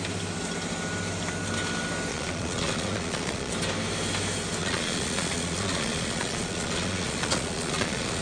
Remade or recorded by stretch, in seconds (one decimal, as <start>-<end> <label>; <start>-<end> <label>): 0.0-2.1 recorded; 2.1-3.5 remade; 3.5-4.6 recorded; 4.6-8.2 remade